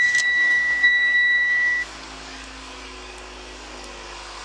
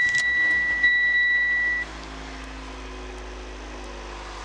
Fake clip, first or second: first